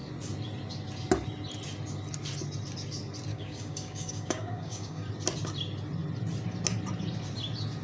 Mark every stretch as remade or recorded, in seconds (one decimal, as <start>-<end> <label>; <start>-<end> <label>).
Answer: 0.0-3.3 recorded; 3.3-5.1 remade; 5.1-7.8 recorded

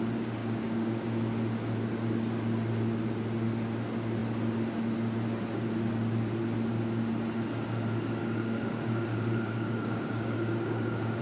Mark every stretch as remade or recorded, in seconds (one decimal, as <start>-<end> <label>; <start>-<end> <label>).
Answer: 0.0-0.4 recorded; 0.4-1.2 remade; 1.2-8.2 recorded; 8.2-11.2 remade

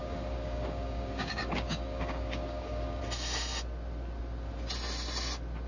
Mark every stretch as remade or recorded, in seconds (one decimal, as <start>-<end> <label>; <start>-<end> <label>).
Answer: 0.0-3.0 remade; 3.0-5.7 recorded

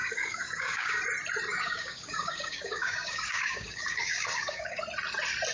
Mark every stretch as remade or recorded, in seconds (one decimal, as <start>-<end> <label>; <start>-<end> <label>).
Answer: 0.0-1.0 remade; 1.0-1.5 recorded; 1.5-4.8 remade; 4.8-5.5 recorded

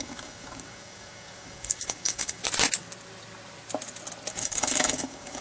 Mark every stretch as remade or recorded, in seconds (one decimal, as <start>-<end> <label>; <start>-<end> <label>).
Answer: 0.0-2.4 remade; 2.4-4.3 recorded; 4.3-5.4 remade